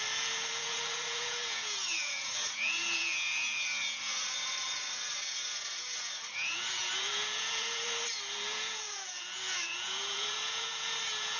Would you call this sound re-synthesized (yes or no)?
yes